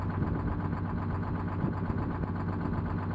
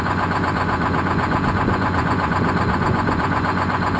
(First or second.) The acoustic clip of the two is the first